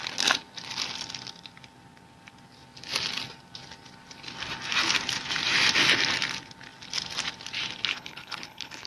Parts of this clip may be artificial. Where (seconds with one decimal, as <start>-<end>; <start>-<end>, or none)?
7.9-8.9